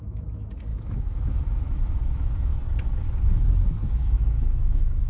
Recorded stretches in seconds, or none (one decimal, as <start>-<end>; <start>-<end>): 2.5-3.9